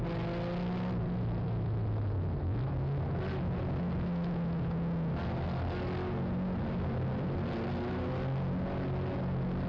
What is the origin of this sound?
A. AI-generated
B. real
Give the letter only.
B